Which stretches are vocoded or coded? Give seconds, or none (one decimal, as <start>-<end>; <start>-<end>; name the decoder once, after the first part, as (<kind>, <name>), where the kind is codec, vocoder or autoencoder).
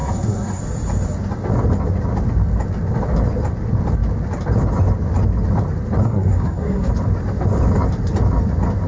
0.0-0.6 (codec, SNAC); 6.0-6.9